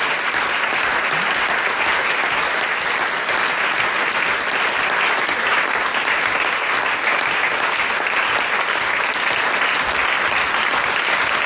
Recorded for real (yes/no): yes